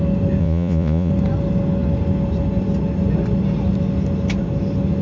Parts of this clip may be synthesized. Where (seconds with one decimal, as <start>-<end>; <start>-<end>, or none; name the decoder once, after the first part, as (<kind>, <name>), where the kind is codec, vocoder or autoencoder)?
0.4-1.1 (vocoder, Vocos)